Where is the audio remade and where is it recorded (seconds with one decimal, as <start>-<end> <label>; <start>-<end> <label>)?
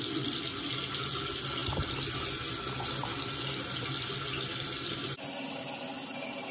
0.0-6.5 recorded